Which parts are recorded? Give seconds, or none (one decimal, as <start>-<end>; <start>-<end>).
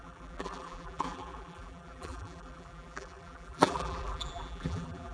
none